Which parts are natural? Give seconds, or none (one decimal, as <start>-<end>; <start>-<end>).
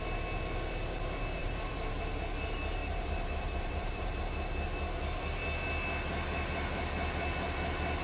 0.0-1.4; 2.0-2.8; 4.2-8.0